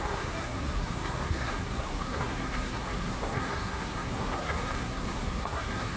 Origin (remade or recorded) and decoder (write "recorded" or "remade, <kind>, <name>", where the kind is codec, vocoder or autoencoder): remade, codec, SNAC